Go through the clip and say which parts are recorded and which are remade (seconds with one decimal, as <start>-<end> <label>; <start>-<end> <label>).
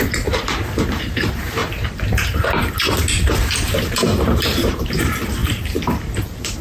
0.0-6.6 remade